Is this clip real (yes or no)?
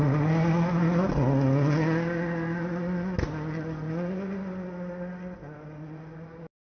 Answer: yes